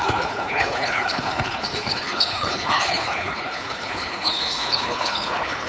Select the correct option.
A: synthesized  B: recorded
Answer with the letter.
A